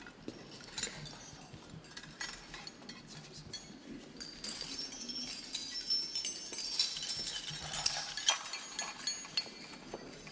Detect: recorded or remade recorded